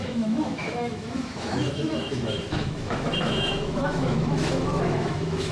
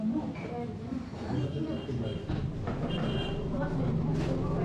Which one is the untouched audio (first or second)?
second